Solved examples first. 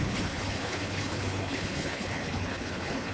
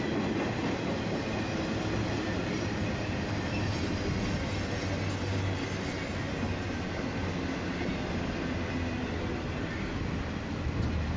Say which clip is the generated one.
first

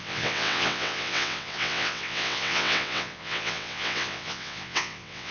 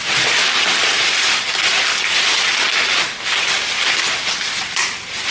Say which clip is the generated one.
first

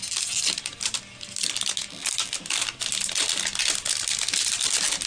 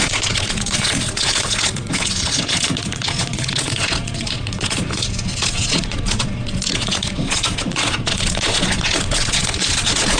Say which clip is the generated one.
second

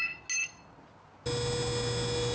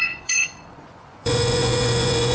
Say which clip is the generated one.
second